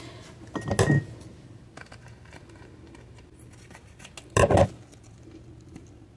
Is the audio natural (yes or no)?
yes